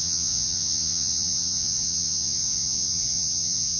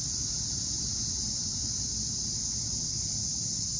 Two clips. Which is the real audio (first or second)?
second